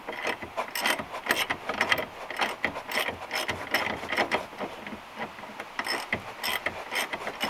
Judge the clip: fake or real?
real